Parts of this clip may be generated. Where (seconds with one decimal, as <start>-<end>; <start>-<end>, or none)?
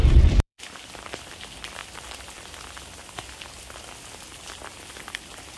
0.0-1.1; 1.8-2.4